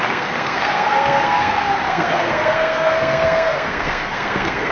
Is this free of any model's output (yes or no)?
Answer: no